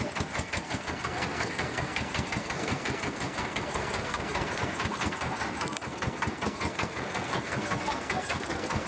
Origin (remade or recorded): remade